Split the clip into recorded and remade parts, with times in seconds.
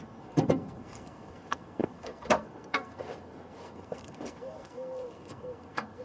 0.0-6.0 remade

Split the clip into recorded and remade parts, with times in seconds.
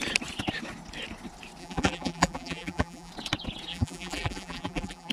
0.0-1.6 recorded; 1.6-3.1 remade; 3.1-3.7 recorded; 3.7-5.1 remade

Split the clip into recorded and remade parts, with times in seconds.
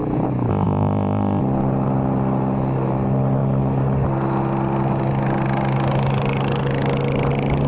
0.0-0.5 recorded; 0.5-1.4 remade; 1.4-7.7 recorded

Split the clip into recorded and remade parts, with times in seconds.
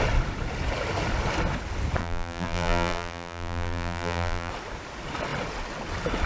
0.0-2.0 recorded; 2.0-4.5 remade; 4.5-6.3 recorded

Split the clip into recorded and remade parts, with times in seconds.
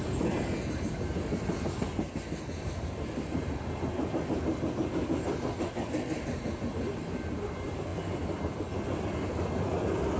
0.0-1.9 recorded; 1.9-4.0 remade; 4.0-5.0 recorded; 5.0-6.9 remade; 6.9-10.2 recorded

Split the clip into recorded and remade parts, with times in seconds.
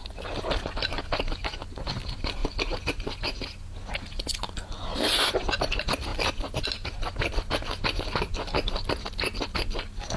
0.0-10.2 recorded